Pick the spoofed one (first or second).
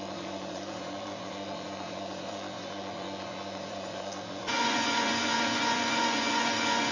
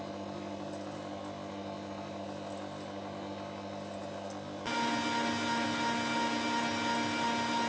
first